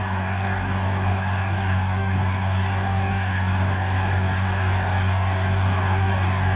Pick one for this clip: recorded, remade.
remade